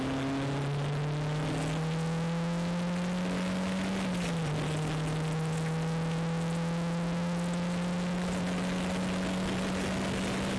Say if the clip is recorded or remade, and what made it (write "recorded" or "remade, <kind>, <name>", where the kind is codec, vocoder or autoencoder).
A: recorded